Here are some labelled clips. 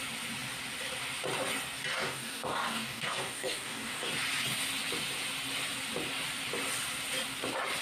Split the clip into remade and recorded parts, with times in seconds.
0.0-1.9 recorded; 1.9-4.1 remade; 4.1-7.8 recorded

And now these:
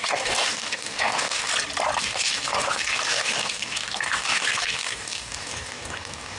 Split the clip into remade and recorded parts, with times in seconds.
0.0-1.5 remade; 1.5-2.0 recorded; 2.0-6.4 remade